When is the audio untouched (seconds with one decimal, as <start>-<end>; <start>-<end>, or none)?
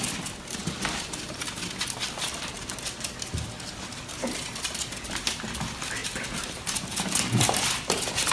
0.0-8.3